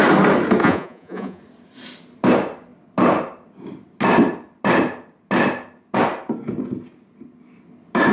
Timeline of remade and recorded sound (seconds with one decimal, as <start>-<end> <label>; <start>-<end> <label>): 0.0-0.6 recorded; 0.6-1.4 remade; 1.4-8.1 recorded